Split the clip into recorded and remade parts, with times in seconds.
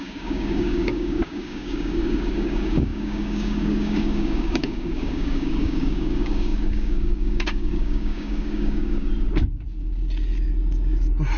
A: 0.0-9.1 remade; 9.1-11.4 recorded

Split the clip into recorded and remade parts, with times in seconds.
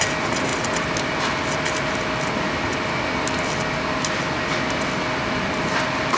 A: 0.0-6.2 recorded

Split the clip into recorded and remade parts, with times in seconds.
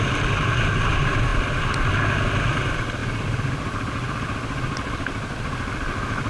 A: 0.0-6.3 recorded